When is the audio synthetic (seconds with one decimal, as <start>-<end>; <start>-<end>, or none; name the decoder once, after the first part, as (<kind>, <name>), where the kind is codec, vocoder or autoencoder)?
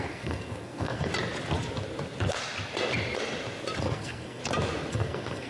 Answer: 0.0-1.1 (codec, SNAC); 3.8-4.4; 4.9-5.5